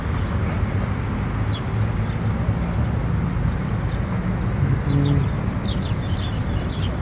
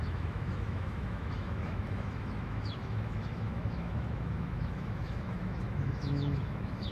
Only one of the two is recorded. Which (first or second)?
first